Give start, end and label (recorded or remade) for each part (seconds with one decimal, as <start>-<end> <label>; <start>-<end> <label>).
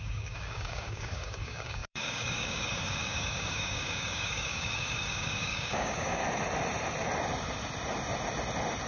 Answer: 0.0-6.2 remade; 6.2-8.9 recorded